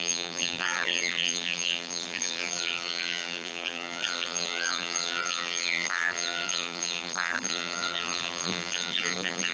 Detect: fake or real fake